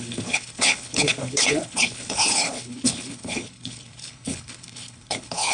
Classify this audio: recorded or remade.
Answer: remade